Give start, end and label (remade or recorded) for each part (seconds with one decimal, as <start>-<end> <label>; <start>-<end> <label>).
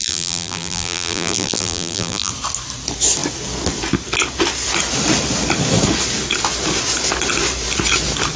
0.0-2.3 remade; 2.3-8.4 recorded